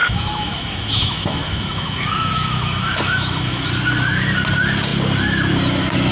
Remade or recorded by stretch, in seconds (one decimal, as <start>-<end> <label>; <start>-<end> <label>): 0.0-3.7 remade; 3.7-6.1 recorded